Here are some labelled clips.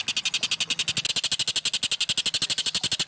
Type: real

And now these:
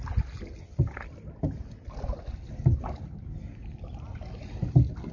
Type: real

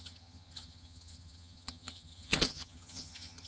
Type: fake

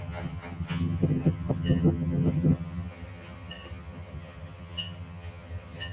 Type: fake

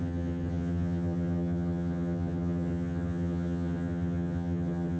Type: fake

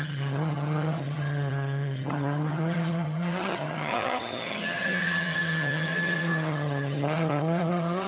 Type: fake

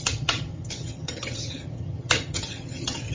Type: fake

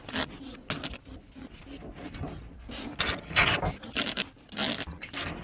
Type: real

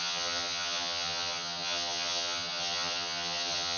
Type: fake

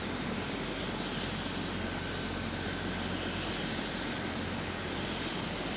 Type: real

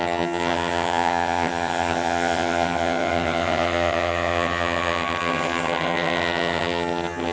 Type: fake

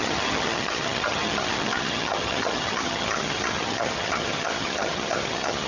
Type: fake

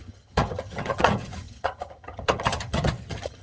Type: fake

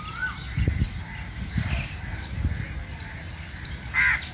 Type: real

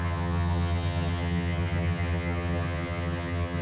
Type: fake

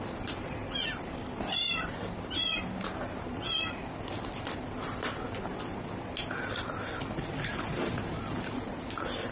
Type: real